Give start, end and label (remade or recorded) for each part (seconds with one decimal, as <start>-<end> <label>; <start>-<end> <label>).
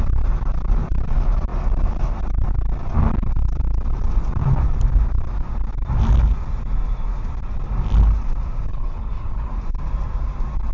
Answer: 0.0-8.7 recorded; 8.7-9.5 remade; 9.5-10.7 recorded